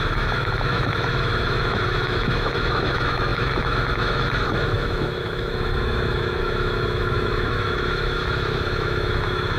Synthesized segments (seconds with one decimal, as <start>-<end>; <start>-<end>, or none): 0.0-9.6